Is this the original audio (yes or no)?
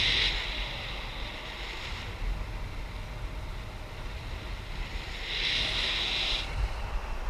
yes